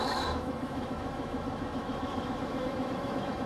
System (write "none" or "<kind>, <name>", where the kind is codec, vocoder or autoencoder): autoencoder, DAC-VAE